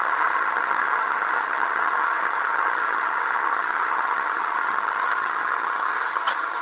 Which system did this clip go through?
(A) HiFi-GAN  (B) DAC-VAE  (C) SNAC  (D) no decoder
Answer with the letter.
A